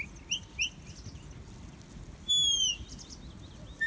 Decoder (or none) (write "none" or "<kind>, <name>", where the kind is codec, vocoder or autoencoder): none